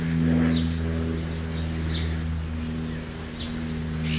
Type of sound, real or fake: real